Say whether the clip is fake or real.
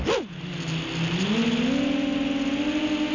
real